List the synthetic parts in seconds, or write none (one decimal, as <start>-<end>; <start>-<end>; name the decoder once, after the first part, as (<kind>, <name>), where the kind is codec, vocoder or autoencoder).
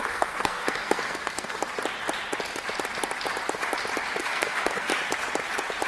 0.0-1.6 (codec, SNAC); 4.2-4.9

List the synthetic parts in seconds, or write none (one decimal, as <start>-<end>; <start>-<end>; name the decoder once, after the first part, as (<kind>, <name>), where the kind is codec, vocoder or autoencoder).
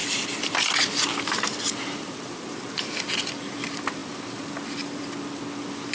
0.0-2.9 (vocoder, BigVGAN v2)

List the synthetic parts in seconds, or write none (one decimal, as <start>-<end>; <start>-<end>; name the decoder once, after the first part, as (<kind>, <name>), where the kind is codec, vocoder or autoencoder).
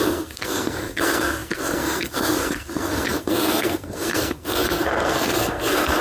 0.0-6.0 (codec, SNAC)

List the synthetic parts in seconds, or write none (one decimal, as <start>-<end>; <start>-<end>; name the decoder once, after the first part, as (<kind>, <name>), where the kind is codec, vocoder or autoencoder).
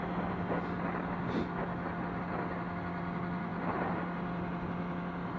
none